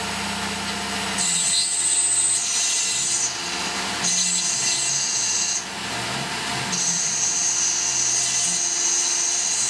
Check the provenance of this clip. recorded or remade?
recorded